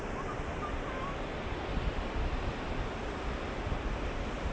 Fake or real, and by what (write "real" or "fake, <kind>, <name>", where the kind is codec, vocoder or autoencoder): real